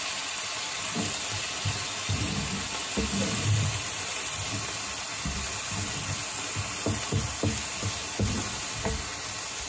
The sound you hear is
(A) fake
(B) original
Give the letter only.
B